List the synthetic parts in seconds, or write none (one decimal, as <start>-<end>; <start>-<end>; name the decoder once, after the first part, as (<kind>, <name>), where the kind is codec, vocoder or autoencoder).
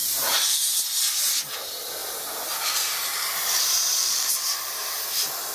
0.0-0.9 (vocoder, BigVGAN v2); 2.0-5.0